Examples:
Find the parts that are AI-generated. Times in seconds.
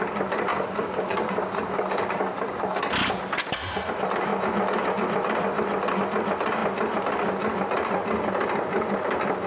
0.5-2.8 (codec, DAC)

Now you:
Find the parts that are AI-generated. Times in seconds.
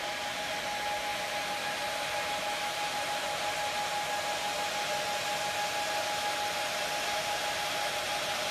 none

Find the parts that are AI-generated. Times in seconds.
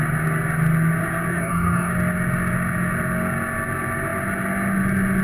1.3-1.9 (codec, DAC)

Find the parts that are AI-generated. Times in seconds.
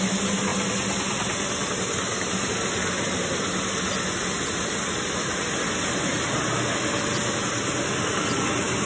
none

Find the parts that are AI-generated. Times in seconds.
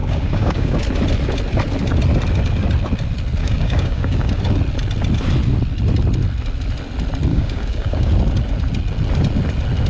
0.0-0.8 (codec, DAC); 3.4-4.4; 7.3-8.1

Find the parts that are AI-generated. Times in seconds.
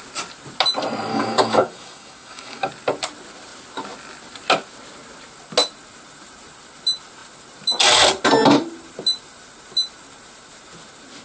1.1-2.7 (codec, DAC)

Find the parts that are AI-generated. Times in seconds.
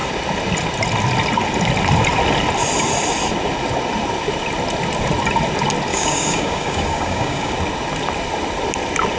5.9-7.5 (codec, DAC)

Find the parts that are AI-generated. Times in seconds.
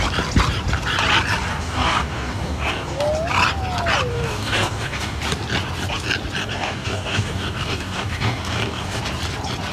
1.5-3.0 (codec, DAC); 4.1-5.2; 6.4-9.0